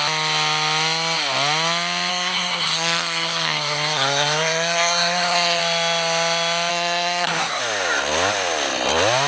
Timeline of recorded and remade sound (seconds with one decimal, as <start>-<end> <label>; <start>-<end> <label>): 0.0-2.1 recorded; 2.1-5.6 remade; 5.6-6.7 recorded; 6.7-7.6 remade; 7.6-9.3 recorded